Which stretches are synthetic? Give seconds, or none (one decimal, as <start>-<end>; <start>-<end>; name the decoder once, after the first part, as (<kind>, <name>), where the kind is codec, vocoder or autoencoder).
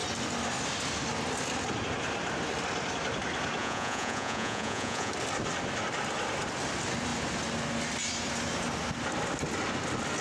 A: 3.6-5.1 (vocoder, Vocos)